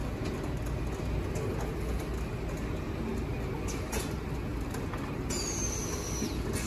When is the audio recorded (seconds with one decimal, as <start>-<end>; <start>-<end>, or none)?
0.0-6.7